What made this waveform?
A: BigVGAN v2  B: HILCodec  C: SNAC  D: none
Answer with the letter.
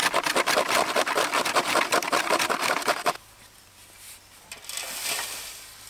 D